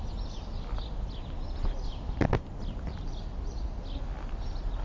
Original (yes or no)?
yes